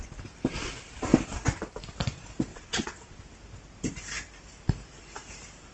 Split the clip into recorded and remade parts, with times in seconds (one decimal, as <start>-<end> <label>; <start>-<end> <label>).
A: 0.0-2.5 recorded; 2.5-3.2 remade; 3.2-5.7 recorded